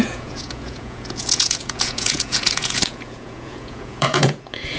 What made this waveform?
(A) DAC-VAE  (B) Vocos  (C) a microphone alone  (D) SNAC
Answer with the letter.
B